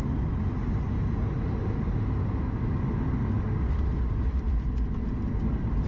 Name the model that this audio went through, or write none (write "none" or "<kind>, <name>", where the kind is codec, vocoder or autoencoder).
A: none